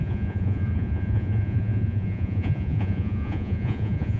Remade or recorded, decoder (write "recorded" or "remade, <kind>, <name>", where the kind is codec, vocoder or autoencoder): remade, vocoder, Vocos